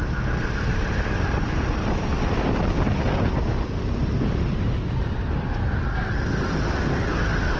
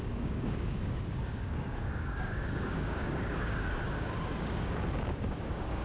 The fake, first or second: second